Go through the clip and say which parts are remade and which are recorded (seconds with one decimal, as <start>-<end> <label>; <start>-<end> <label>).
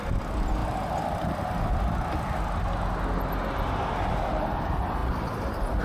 0.0-5.8 recorded